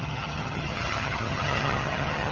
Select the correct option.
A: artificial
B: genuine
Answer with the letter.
A